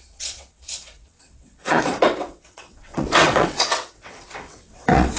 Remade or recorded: remade